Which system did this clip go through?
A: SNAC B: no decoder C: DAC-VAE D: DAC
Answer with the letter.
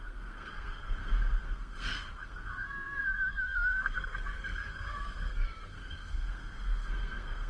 A